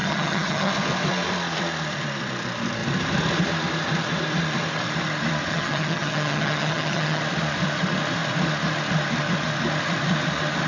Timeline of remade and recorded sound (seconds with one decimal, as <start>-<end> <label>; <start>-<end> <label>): 0.0-0.7 remade; 0.7-5.5 recorded; 5.5-7.2 remade; 7.2-10.7 recorded